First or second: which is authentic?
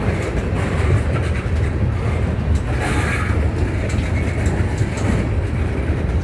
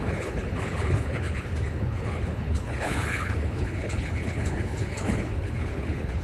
first